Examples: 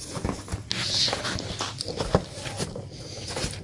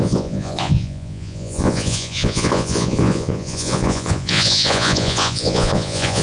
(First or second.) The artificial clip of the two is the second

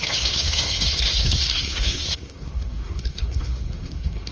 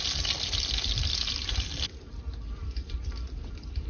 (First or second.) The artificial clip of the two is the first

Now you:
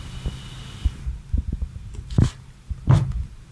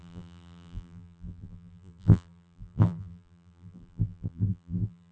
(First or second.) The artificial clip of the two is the second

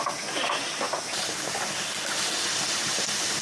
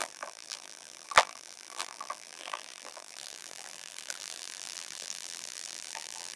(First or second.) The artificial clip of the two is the second